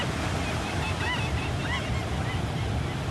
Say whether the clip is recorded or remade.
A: recorded